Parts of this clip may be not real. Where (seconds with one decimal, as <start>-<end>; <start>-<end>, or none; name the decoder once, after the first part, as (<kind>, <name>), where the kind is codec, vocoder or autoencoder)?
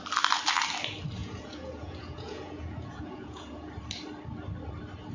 1.2-3.7 (vocoder, Vocos)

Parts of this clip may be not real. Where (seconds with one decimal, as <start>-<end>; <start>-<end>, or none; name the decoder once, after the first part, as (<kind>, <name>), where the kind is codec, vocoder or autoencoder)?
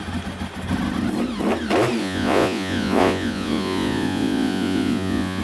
2.0-5.4 (vocoder, Vocos)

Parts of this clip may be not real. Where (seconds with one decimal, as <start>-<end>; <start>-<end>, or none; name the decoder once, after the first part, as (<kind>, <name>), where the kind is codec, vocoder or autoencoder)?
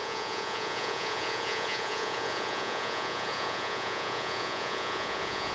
0.0-5.5 (vocoder, Vocos)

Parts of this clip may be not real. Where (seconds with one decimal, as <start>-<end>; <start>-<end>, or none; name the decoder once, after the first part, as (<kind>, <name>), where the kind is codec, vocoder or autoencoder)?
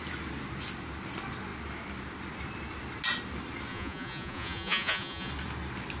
3.7-5.3 (vocoder, Vocos)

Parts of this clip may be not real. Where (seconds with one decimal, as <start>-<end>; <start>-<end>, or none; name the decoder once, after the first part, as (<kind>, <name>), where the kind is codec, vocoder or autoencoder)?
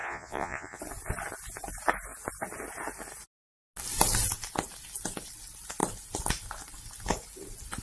0.0-0.8 (vocoder, Vocos)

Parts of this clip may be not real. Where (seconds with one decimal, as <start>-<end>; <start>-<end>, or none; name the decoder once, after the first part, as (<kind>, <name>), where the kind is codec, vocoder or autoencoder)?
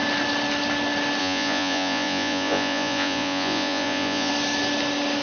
1.2-4.3 (vocoder, Vocos)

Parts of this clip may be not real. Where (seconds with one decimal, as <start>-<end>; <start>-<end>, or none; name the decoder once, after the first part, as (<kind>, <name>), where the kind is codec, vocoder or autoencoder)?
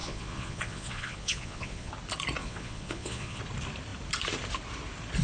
0.0-1.9 (vocoder, Vocos); 2.4-3.4